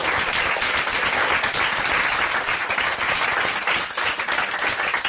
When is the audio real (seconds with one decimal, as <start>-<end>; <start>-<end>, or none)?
0.0-5.1